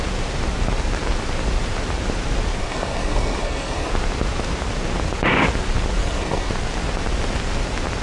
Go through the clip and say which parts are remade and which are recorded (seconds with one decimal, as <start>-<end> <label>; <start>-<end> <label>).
0.0-2.6 recorded; 2.6-3.9 remade; 3.9-6.0 recorded; 6.0-6.5 remade; 6.5-8.0 recorded